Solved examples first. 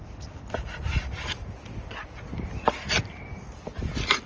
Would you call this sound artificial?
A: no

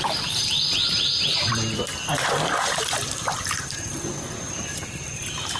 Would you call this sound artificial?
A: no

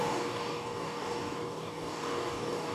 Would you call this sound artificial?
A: yes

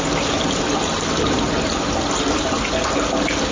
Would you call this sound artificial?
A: no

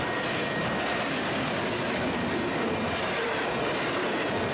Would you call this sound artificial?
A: no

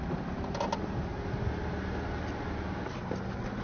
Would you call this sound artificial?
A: no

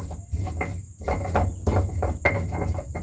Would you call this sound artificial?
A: no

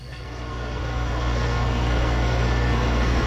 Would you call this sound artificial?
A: yes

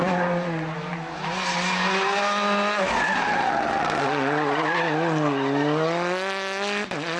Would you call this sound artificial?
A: no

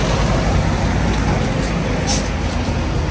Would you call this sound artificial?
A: no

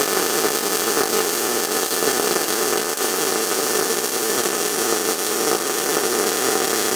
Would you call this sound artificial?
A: no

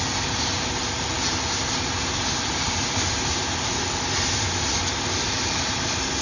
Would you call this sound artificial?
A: no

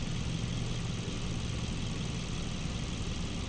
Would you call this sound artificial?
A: no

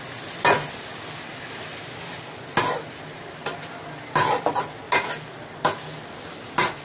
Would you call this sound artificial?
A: no